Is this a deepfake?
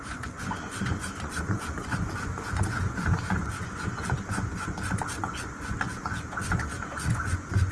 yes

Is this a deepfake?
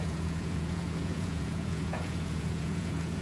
yes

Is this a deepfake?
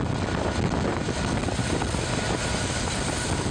no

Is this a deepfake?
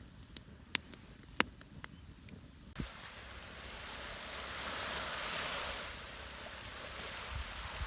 no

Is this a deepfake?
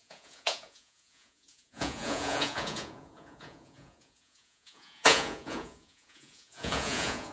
yes